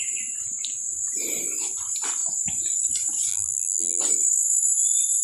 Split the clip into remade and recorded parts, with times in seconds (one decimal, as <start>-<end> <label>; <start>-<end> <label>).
0.0-3.3 recorded; 3.3-4.0 remade; 4.0-5.2 recorded